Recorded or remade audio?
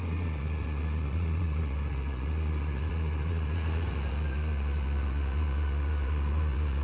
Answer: remade